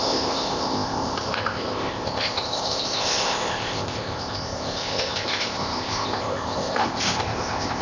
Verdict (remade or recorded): remade